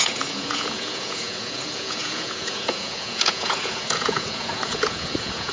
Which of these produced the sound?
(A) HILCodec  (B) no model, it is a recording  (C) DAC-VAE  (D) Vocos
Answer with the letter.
D